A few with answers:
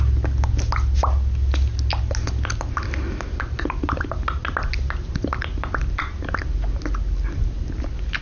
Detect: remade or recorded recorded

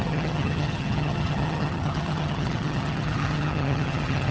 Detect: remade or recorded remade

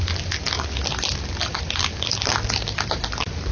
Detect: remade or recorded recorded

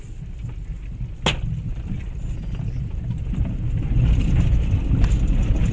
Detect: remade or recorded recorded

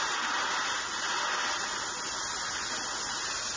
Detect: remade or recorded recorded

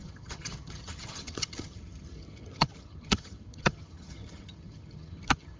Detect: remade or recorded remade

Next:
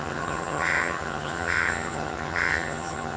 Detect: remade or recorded remade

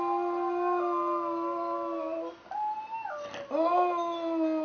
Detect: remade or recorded recorded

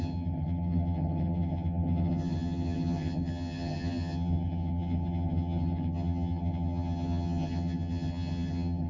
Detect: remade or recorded remade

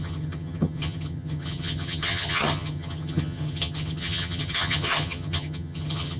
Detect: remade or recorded remade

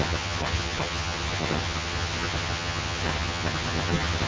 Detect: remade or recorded remade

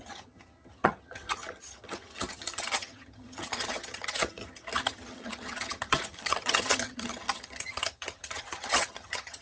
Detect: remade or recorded remade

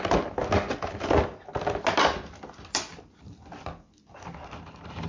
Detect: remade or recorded recorded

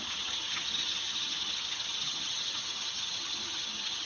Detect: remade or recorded remade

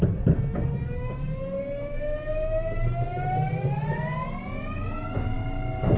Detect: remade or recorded recorded